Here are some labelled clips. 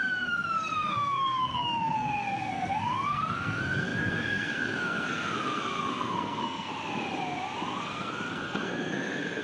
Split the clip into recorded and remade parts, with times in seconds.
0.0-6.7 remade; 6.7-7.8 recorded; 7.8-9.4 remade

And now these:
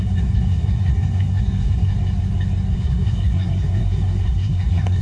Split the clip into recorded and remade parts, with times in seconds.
0.0-1.9 remade; 1.9-2.7 recorded; 2.7-5.0 remade

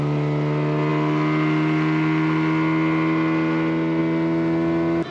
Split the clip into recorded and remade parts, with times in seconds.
0.0-5.1 recorded

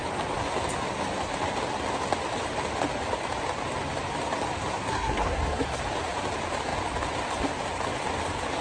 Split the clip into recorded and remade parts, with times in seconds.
0.0-4.7 recorded; 4.7-5.8 remade; 5.8-8.6 recorded

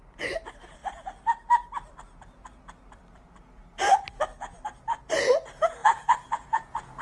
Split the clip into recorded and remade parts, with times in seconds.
0.0-5.8 recorded; 5.8-7.0 remade

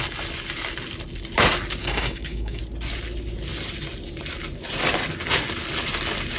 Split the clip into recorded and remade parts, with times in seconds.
0.0-1.8 recorded; 1.8-2.6 remade; 2.6-6.4 recorded

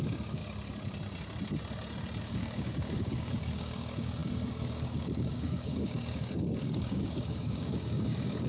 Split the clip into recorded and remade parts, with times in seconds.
0.0-0.4 remade; 0.4-2.2 recorded; 2.2-8.5 remade

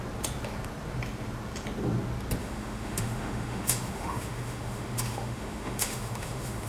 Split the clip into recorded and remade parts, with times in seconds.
0.0-2.4 recorded; 2.4-6.7 remade